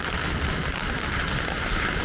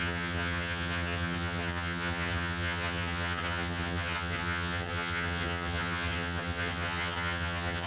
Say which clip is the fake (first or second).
second